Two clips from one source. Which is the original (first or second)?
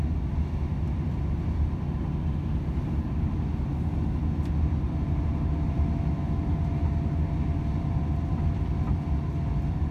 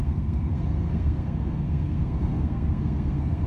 first